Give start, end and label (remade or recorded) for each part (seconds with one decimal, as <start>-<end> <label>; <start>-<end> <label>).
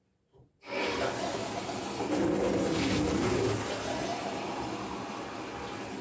0.0-1.4 recorded; 1.4-2.1 remade; 2.1-4.1 recorded; 4.1-5.1 remade; 5.1-6.0 recorded